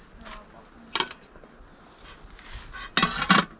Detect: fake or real real